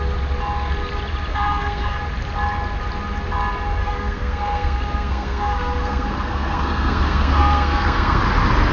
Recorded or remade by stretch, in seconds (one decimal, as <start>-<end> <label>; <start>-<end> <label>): 0.0-1.3 recorded; 1.3-2.0 remade; 2.0-3.8 recorded; 3.8-8.2 remade; 8.2-8.7 recorded